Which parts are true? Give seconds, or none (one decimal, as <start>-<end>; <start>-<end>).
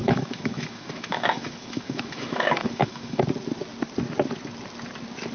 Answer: 3.2-5.3